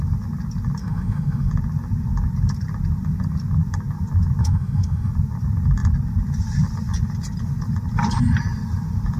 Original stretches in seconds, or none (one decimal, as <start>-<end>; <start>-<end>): 0.0-0.8; 1.5-4.4; 5.1-9.2